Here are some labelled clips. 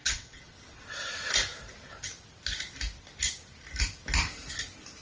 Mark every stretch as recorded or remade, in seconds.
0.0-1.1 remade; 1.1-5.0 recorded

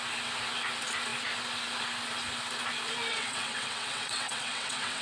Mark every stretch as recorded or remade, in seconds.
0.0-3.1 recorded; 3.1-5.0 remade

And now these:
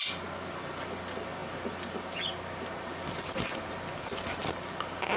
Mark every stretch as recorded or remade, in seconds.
0.0-5.2 recorded

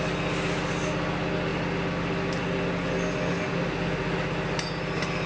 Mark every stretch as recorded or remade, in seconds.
0.0-5.3 recorded